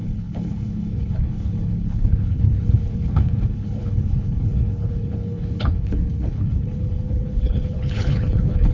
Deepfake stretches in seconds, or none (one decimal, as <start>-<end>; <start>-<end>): 0.0-8.7